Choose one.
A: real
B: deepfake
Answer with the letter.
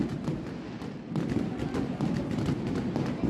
A